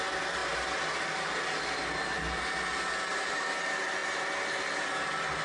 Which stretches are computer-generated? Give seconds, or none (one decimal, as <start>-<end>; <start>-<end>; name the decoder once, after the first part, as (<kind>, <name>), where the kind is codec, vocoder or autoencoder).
none